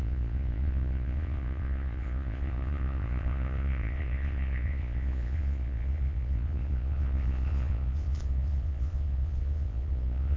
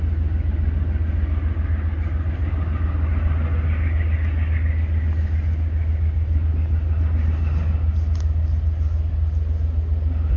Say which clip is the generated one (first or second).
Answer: first